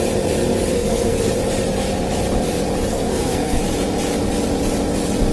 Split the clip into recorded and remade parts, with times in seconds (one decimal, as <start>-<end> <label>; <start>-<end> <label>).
0.0-0.7 recorded; 0.7-1.3 remade; 1.3-2.9 recorded; 2.9-3.6 remade; 3.6-5.3 recorded